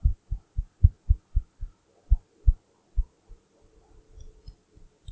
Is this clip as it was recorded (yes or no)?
yes